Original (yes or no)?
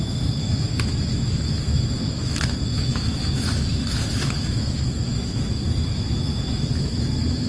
no